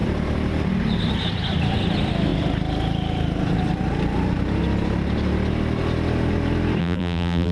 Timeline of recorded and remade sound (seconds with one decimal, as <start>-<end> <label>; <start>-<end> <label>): 0.0-6.8 recorded; 6.8-7.5 remade